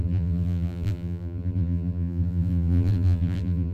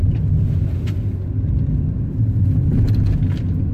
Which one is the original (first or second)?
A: second